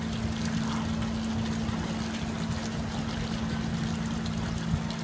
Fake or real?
real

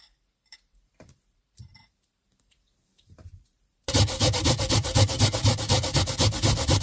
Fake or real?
fake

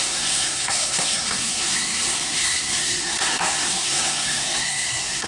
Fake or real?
fake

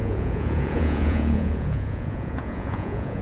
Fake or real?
fake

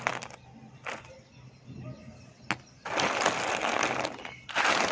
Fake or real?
real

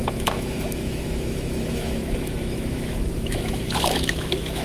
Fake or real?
fake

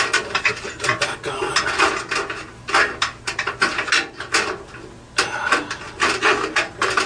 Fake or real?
real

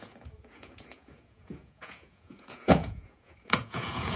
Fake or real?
fake